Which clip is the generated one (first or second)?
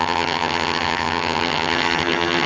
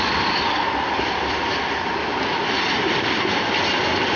first